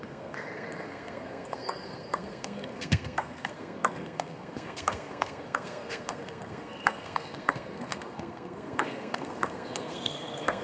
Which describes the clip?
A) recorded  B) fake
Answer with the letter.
B